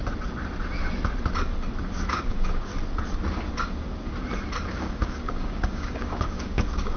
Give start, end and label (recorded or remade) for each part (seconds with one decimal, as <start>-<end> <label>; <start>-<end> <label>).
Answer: 0.0-2.1 recorded; 2.1-2.7 remade; 2.7-3.6 recorded; 3.6-4.1 remade; 4.1-4.7 recorded; 4.7-7.0 remade